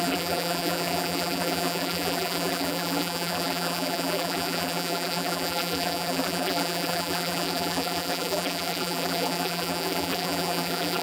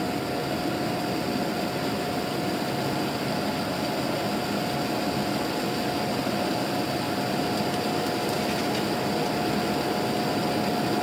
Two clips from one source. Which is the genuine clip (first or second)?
second